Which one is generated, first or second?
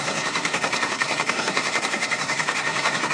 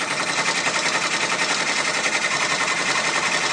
first